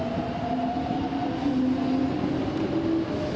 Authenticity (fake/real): real